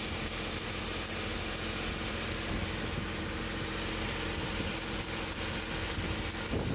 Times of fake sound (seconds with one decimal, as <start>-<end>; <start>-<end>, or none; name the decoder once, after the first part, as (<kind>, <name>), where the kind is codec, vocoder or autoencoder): 0.0-1.3 (vocoder, BigVGAN v2); 3.9-6.7